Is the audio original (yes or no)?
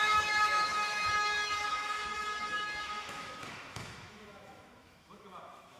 no